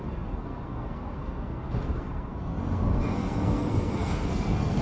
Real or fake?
fake